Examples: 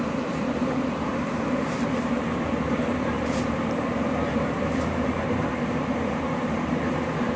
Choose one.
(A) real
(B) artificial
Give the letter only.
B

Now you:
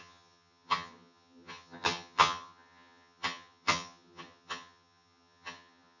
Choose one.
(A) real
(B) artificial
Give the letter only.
B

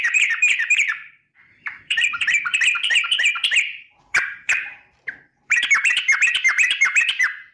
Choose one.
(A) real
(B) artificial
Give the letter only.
B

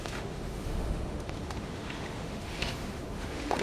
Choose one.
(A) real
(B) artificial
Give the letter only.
B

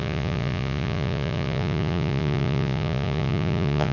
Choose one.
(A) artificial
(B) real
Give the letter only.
A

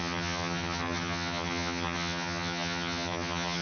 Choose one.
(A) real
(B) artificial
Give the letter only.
B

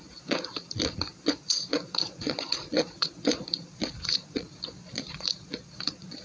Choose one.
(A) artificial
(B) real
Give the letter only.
A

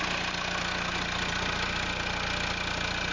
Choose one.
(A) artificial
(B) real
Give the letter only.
B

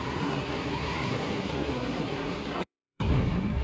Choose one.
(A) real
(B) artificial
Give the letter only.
B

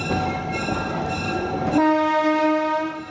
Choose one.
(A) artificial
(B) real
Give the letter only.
B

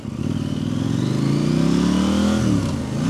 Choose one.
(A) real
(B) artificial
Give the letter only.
A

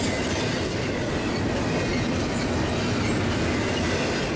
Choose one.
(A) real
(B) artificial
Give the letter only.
A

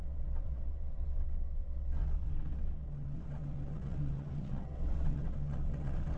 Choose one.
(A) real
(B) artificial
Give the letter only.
B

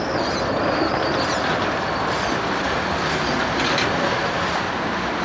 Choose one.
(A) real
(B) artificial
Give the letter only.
A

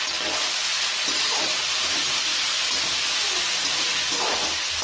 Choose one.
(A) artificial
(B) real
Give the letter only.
B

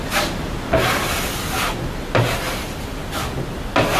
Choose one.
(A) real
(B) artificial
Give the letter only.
A